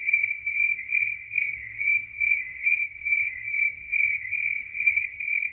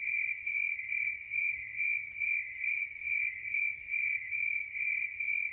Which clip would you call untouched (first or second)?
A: second